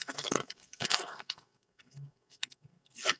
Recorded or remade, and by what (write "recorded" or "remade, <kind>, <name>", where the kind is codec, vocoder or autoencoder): remade, codec, SNAC